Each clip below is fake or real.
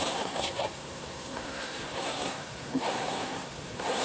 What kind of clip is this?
fake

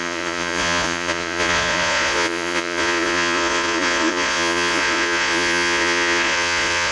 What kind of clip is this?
fake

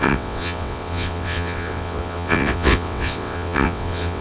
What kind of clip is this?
fake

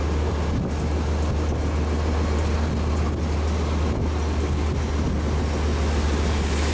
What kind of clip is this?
real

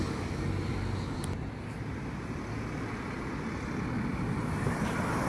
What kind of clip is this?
real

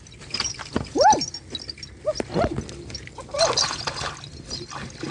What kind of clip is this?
real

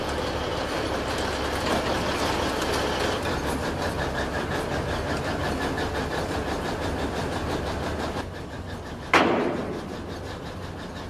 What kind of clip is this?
real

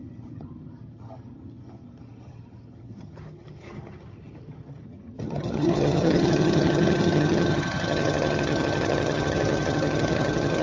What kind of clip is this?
fake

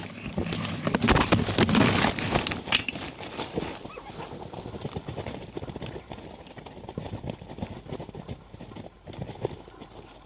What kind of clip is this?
real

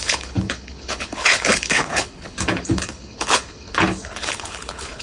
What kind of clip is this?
fake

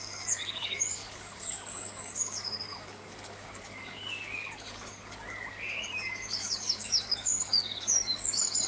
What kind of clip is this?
fake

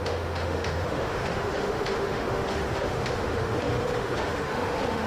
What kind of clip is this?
fake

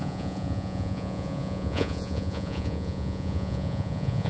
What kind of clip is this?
fake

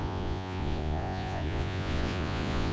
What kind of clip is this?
fake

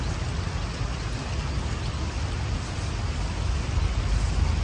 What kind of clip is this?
real